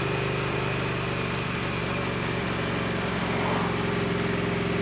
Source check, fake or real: real